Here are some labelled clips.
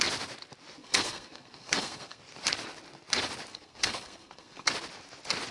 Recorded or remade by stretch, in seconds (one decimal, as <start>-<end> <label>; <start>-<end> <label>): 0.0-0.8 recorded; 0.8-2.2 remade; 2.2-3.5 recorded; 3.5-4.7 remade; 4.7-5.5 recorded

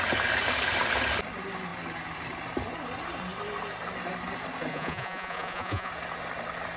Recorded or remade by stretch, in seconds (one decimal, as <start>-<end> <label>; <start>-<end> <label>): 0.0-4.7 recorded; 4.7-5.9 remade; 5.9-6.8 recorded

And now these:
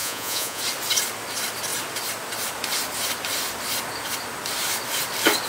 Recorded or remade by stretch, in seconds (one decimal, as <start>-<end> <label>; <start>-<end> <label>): 0.0-0.6 remade; 0.6-5.5 recorded

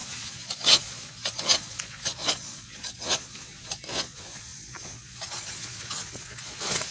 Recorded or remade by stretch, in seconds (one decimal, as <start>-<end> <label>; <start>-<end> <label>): 0.0-6.9 remade

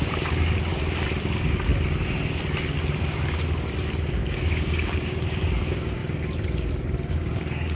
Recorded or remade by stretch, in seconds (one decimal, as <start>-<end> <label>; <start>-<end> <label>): 0.0-0.7 remade; 0.7-1.2 recorded; 1.2-1.7 remade; 1.7-4.1 recorded; 4.1-6.0 remade; 6.0-7.1 recorded; 7.1-7.8 remade